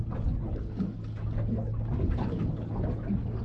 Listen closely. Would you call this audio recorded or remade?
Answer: recorded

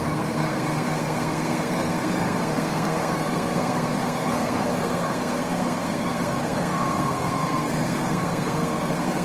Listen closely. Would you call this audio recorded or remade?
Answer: remade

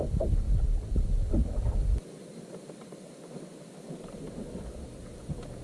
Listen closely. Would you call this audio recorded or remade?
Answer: recorded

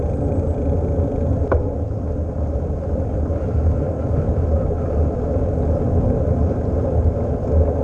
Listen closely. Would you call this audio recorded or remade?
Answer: recorded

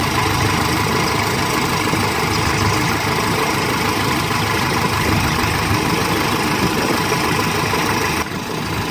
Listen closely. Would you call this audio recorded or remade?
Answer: recorded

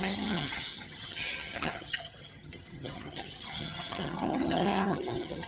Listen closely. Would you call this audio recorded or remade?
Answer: remade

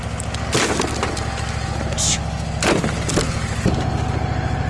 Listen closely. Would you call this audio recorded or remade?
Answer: recorded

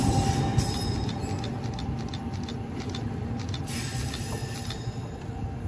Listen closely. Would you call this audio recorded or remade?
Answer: recorded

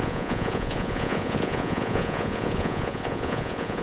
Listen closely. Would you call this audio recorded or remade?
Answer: remade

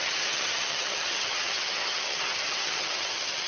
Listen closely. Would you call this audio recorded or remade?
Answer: remade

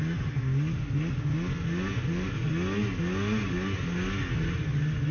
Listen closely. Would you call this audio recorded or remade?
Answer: recorded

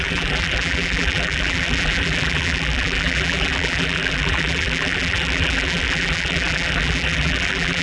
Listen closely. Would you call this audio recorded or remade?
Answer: remade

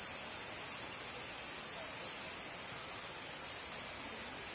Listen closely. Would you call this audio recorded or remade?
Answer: recorded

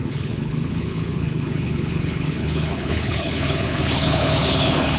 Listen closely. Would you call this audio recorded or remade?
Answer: remade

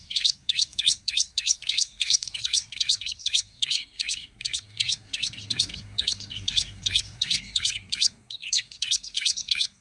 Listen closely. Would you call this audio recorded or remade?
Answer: remade